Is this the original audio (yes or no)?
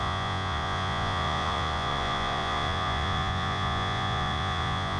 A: no